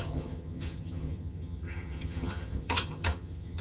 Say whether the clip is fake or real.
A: fake